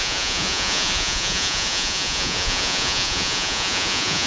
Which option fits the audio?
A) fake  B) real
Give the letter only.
A